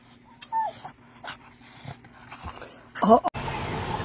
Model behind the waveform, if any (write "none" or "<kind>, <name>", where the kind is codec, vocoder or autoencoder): none